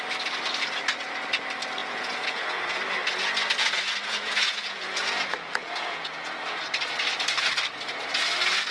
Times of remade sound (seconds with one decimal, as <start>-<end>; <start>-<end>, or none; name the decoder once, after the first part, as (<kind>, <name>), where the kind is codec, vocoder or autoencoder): 1.8-2.8 (vocoder, Vocos); 3.6-6.6